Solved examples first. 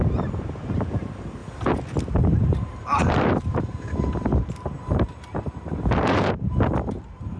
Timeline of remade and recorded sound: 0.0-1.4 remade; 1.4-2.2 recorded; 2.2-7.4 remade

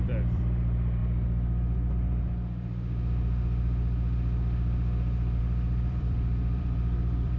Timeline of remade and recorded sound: 0.0-1.0 remade; 1.0-5.4 recorded; 5.4-7.4 remade

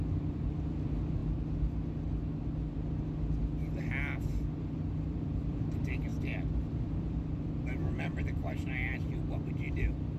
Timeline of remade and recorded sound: 0.0-1.2 remade; 1.2-4.5 recorded; 4.5-6.1 remade; 6.1-6.7 recorded; 6.7-10.2 remade

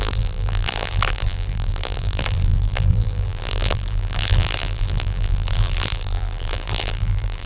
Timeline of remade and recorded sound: 0.0-7.5 remade